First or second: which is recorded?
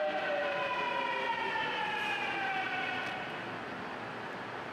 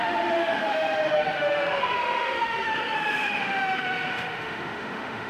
first